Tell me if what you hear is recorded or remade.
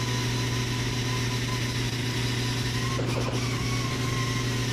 recorded